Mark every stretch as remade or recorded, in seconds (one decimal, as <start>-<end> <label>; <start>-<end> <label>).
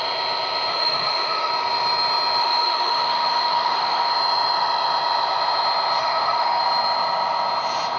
0.0-0.7 recorded; 0.7-1.5 remade; 1.5-2.4 recorded; 2.4-4.1 remade; 4.1-6.0 recorded; 6.0-6.6 remade; 6.6-8.0 recorded